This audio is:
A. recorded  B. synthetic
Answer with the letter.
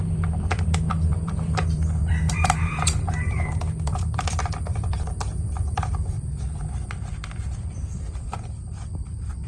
B